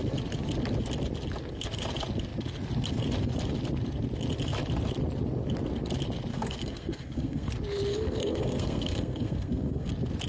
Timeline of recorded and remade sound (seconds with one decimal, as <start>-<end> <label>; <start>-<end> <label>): 0.0-6.3 recorded; 6.3-7.5 remade; 7.5-7.9 recorded; 7.9-9.9 remade; 9.9-10.3 recorded